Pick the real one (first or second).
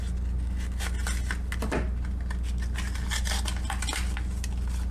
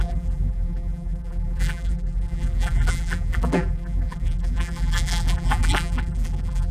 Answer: first